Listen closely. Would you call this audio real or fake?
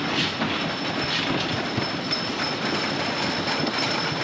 real